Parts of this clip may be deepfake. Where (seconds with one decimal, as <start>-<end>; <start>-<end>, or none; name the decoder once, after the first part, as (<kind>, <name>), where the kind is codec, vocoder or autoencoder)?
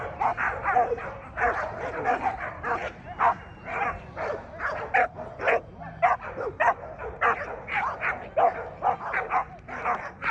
none